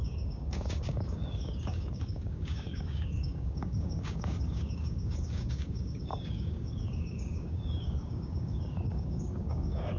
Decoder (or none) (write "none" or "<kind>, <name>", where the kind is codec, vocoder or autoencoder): codec, DAC